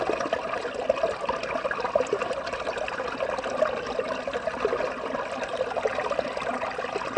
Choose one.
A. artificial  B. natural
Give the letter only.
B